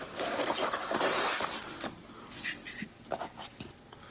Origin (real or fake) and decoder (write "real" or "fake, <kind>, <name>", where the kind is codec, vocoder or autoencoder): real